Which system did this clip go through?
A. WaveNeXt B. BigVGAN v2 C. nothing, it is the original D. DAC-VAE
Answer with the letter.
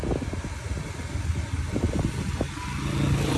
C